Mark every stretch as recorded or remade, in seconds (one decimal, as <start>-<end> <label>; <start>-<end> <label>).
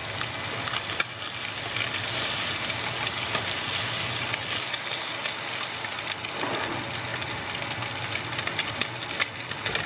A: 0.0-9.9 recorded